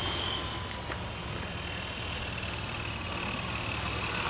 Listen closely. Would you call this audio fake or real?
real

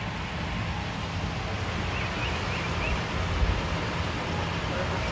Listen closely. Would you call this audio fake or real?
real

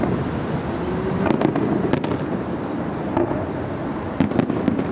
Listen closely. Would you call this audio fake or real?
real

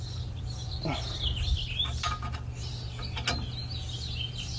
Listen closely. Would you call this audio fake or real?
real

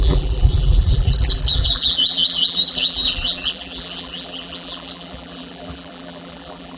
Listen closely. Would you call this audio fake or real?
fake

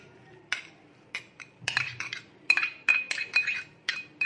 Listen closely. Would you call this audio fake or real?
fake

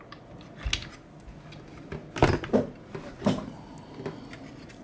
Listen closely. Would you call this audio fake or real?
real